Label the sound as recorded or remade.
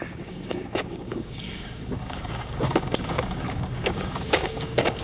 remade